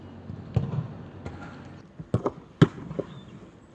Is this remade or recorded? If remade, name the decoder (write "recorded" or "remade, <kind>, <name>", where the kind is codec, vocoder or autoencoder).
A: recorded